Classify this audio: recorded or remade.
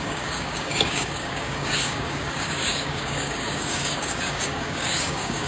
remade